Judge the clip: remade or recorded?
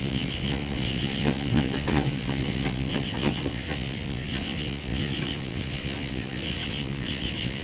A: remade